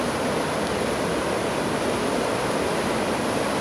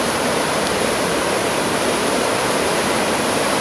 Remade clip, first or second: second